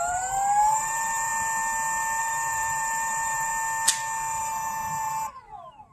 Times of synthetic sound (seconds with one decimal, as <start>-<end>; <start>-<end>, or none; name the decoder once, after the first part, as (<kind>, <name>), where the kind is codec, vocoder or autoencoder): 0.0-1.3 (vocoder, BigVGAN v2); 2.2-3.5; 4.4-5.9